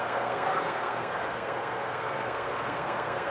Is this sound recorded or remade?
remade